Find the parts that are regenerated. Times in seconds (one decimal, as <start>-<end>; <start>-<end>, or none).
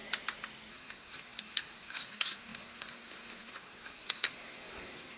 0.7-5.2